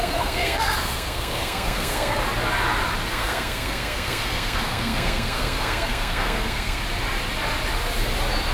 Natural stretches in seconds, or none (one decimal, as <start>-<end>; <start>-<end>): 2.2-3.1; 6.8-8.5